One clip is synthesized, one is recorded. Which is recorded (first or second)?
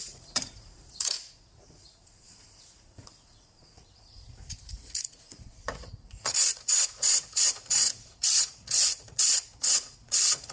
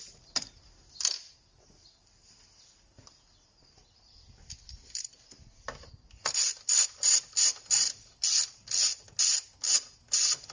second